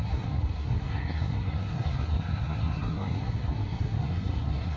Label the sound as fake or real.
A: fake